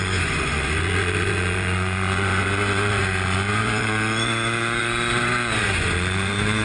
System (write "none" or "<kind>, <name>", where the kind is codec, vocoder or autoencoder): vocoder, Vocos